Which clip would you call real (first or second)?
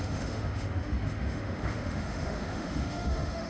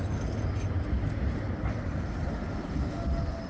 second